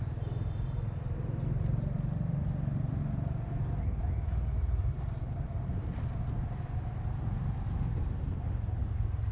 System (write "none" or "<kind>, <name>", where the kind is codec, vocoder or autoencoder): none